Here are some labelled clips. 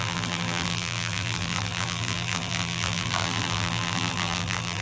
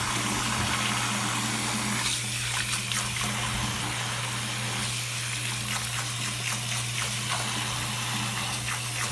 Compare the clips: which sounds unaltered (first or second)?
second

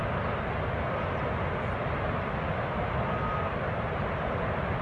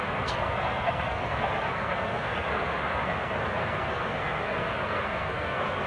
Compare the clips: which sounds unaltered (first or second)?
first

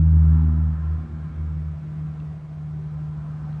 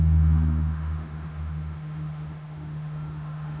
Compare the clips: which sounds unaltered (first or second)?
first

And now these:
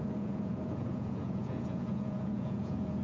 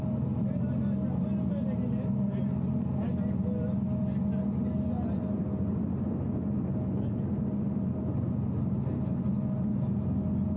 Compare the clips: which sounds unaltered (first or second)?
second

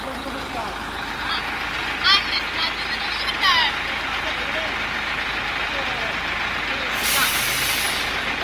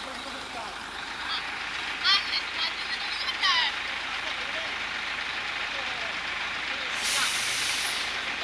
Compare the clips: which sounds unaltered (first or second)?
first